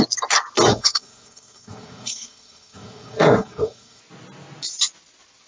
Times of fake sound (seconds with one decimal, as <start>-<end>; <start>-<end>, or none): 0.7-4.0